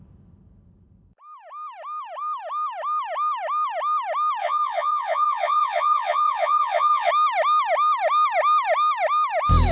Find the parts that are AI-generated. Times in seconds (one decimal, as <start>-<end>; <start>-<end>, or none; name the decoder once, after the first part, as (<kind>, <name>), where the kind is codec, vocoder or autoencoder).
4.4-7.1 (vocoder, Vocos)